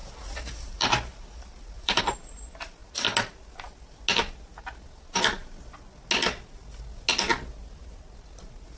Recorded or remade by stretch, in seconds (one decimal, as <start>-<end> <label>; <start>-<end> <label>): 0.0-2.0 remade; 2.0-8.8 recorded

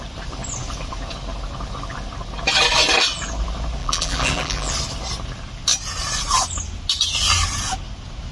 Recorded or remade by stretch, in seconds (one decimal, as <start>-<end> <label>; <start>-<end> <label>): 0.0-3.8 recorded; 3.8-4.7 remade; 4.7-8.3 recorded

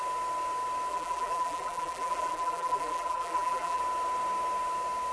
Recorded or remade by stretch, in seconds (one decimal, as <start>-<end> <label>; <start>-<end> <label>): 0.0-0.9 recorded; 0.9-3.8 remade; 3.8-5.1 recorded

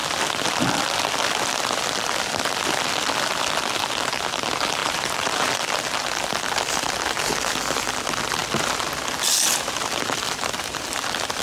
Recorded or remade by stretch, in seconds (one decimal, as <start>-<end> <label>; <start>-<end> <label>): 0.0-4.8 recorded; 4.8-5.6 remade; 5.6-11.4 recorded

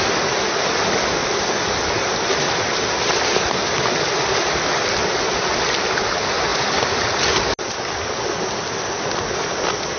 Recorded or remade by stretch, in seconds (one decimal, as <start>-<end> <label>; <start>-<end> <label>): 0.0-10.0 recorded